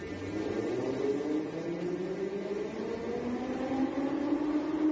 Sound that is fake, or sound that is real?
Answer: real